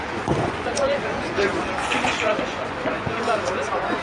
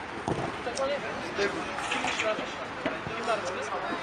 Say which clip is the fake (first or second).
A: first